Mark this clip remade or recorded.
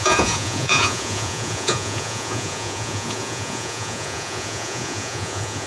remade